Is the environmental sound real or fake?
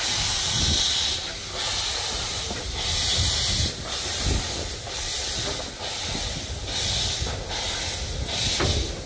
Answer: real